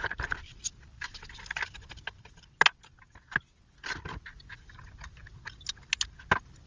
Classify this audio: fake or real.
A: real